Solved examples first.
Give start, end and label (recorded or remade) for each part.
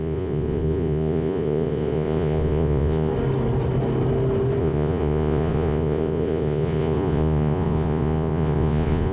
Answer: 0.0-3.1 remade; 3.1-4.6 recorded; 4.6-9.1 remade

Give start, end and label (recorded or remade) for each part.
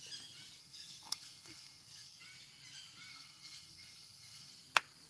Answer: 0.0-0.6 recorded; 0.6-2.2 remade; 2.2-3.1 recorded; 3.1-4.5 remade; 4.5-5.1 recorded